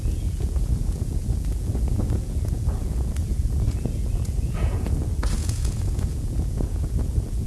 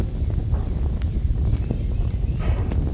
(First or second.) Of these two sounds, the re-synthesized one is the first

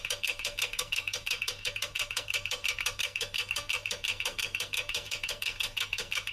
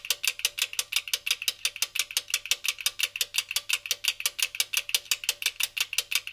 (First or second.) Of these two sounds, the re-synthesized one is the first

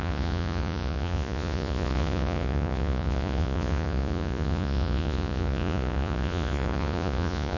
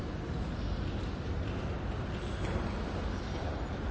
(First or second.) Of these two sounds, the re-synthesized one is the first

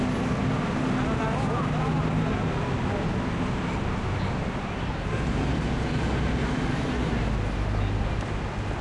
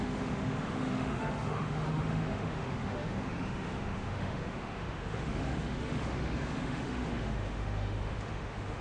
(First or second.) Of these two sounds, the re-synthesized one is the second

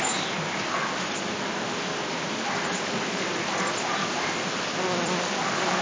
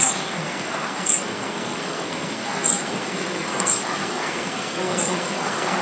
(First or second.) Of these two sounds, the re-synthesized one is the second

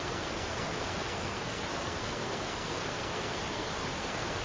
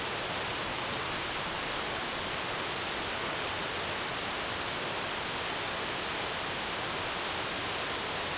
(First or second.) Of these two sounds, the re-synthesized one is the first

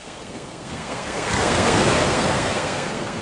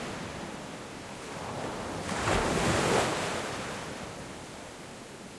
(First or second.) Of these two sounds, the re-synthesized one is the first